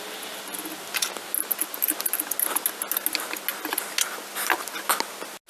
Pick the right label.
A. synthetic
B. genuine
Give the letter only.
B